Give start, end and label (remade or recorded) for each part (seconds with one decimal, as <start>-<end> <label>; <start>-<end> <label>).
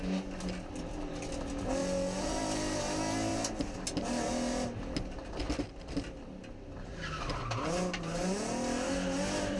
0.0-9.6 recorded